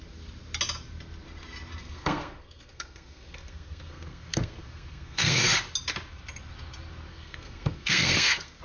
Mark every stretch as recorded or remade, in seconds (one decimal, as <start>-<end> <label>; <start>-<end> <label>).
0.0-1.8 recorded; 1.8-5.4 remade; 5.4-7.1 recorded; 7.1-8.6 remade